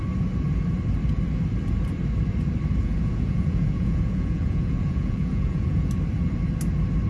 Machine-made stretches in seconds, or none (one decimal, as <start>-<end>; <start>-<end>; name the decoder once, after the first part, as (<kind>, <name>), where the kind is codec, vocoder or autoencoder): 2.8-5.9 (vocoder, Vocos)